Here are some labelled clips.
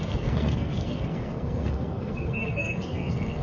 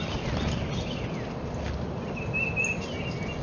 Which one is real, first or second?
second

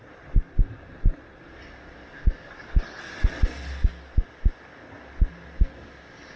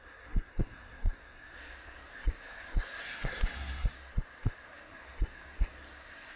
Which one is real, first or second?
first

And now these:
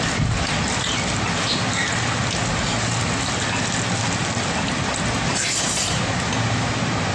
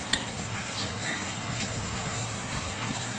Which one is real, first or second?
first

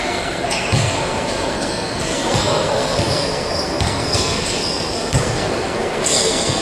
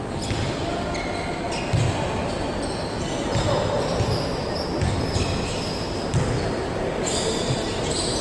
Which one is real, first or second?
second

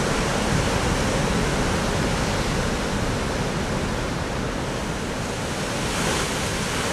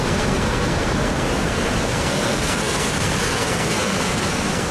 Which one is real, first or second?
first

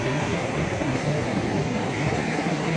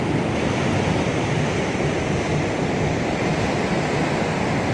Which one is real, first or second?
second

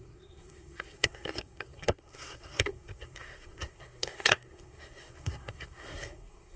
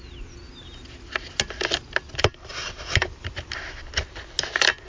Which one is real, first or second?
second